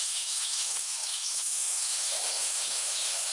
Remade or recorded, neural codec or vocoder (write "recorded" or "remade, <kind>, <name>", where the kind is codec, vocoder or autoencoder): remade, autoencoder, DAC-VAE